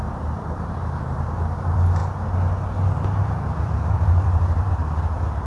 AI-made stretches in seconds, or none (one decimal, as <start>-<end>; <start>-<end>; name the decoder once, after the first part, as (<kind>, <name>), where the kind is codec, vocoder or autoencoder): 0.0-2.0 (vocoder, BigVGAN v2); 3.6-5.5